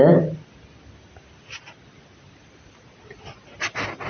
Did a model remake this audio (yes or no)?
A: no